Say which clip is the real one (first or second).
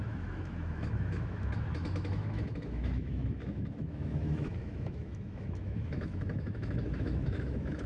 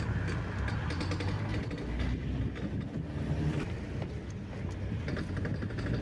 second